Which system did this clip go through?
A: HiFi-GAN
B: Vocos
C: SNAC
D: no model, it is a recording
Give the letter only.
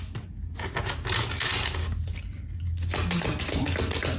D